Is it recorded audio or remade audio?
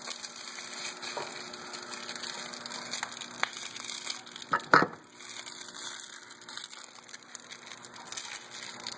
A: recorded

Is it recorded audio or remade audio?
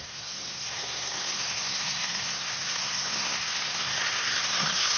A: remade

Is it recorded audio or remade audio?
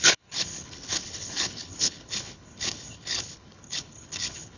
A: remade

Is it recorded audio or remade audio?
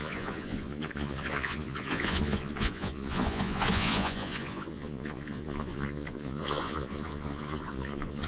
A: remade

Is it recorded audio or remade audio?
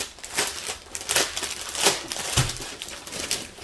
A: remade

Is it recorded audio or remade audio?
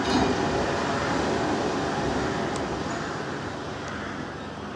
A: recorded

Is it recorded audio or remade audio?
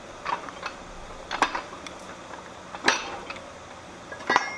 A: recorded